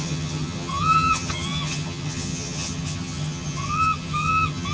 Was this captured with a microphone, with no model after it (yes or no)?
no